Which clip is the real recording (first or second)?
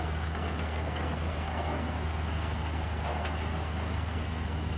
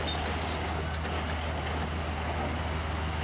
second